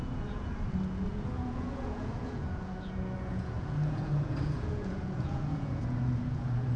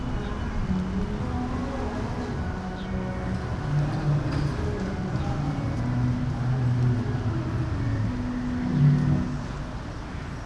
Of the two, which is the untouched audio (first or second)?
second